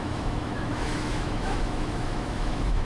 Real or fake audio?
fake